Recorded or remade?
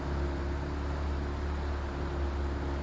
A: recorded